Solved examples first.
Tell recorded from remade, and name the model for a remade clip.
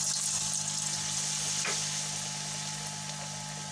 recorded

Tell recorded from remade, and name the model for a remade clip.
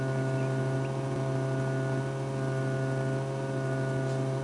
recorded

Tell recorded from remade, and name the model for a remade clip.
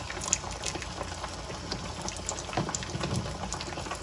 recorded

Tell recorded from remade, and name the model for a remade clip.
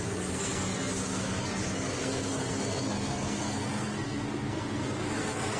remade, codec, SNAC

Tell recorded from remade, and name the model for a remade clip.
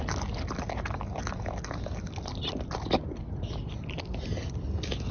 recorded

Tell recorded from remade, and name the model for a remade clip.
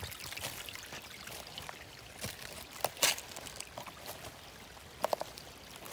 recorded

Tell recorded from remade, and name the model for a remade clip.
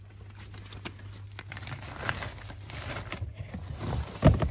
recorded